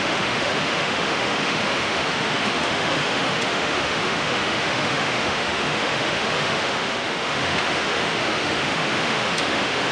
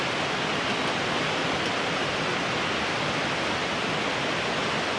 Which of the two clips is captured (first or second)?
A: second